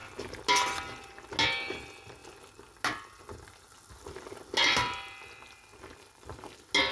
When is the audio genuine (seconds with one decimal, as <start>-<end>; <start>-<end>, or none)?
0.0-6.9